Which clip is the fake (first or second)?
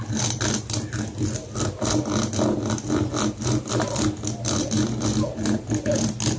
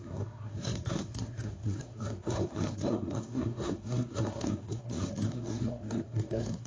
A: second